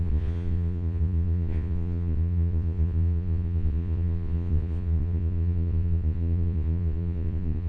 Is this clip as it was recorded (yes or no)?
no